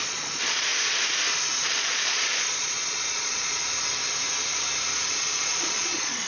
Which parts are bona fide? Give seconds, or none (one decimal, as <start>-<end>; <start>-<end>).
0.7-1.7; 3.6-5.1

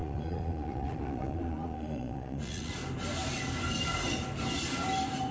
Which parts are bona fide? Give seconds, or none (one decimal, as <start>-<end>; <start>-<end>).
2.7-5.3

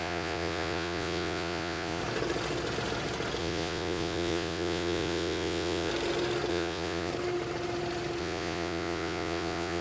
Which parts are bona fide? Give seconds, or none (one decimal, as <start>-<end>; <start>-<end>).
2.0-3.4; 5.9-6.5; 7.1-8.2

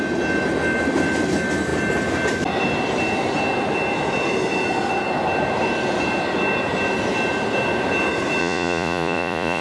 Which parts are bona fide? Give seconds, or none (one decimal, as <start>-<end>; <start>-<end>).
0.0-8.4

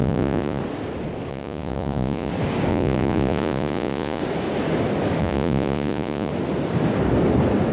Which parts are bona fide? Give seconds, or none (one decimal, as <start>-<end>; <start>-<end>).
0.6-1.3; 2.3-2.7; 4.2-5.2; 6.3-7.7

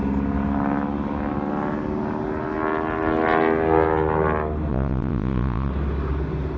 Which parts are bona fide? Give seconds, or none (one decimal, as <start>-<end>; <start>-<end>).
0.0-4.7; 5.7-6.6

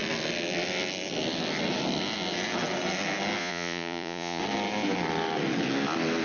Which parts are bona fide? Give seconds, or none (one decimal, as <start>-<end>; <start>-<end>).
0.0-3.4; 4.4-6.2

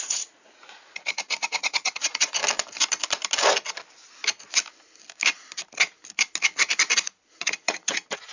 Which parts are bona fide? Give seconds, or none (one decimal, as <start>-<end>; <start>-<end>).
2.4-7.4